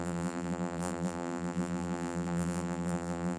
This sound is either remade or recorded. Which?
remade